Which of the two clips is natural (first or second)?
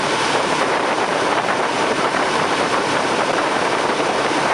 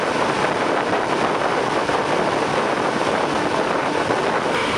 second